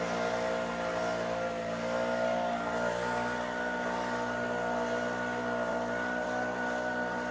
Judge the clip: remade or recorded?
recorded